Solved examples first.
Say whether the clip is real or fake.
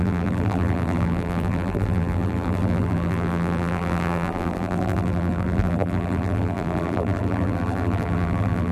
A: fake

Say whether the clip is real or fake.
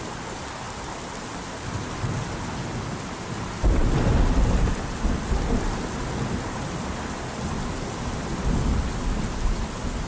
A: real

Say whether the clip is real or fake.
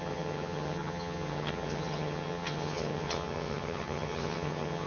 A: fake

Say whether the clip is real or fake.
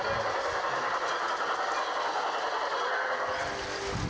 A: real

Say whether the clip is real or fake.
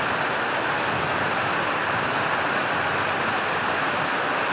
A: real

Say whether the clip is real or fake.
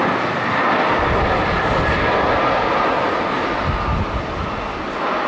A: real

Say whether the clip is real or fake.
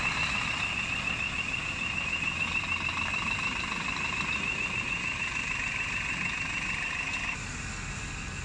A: real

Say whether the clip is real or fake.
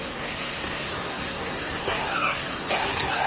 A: fake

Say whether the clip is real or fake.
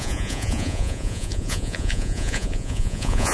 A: fake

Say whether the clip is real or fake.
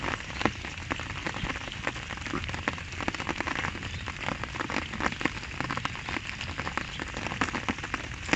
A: real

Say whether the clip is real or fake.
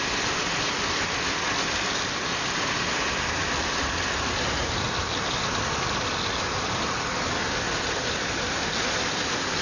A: real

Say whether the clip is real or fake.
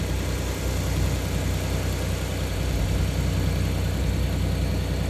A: real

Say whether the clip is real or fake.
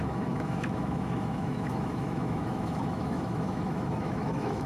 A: fake